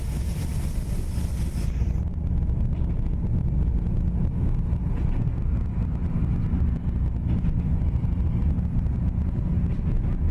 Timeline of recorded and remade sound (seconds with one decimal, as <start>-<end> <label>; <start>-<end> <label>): 0.0-8.4 recorded; 8.4-9.1 remade; 9.1-10.3 recorded